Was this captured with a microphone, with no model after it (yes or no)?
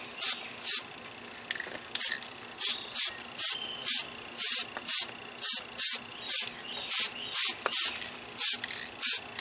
yes